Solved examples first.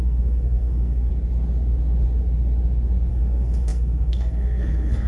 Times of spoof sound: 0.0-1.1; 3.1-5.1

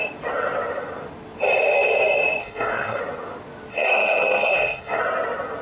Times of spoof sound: 2.4-3.0; 3.7-5.0

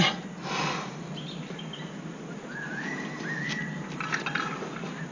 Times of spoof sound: none

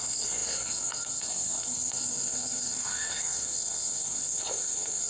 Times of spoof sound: 0.0-5.1

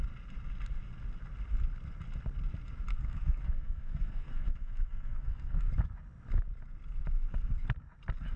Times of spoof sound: 2.9-5.7